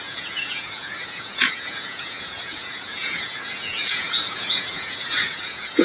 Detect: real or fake fake